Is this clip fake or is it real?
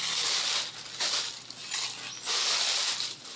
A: real